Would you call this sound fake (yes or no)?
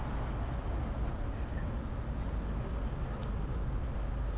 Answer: no